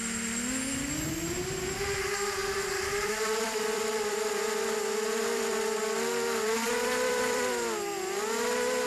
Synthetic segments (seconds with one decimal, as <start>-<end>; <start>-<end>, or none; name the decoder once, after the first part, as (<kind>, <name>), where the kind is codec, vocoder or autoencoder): 2.4-5.8 (vocoder, BigVGAN v2); 6.6-7.5